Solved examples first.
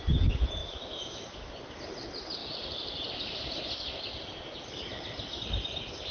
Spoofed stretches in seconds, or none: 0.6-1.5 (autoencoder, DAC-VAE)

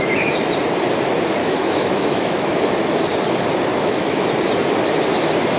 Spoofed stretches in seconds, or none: 1.4-2.5 (autoencoder, DAC-VAE); 3.7-4.3

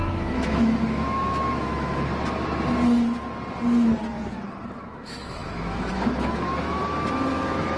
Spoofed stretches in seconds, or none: 0.0-2.1 (autoencoder, DAC-VAE); 4.8-6.8; 7.3-7.8

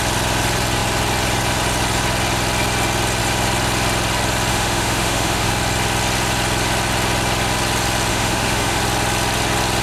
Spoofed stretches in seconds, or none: 4.5-5.5 (autoencoder, DAC-VAE); 8.1-8.8

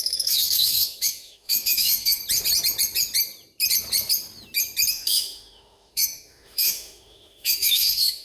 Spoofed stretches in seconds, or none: 0.0-2.2 (autoencoder, DAC-VAE); 4.9-8.2